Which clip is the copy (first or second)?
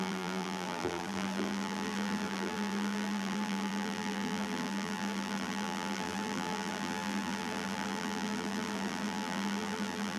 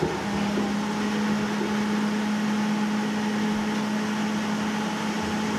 first